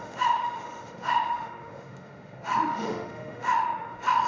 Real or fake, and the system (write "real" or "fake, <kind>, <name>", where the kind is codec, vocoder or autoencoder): fake, autoencoder, DAC-VAE